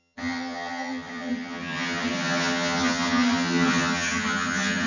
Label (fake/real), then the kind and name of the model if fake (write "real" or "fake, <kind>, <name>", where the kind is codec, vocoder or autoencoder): fake, vocoder, HiFi-GAN